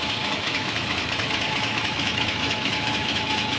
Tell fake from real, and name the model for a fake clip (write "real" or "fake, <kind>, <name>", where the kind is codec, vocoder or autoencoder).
fake, autoencoder, DAC-VAE